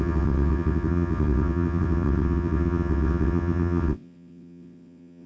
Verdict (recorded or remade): remade